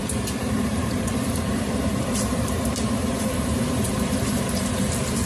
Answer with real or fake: fake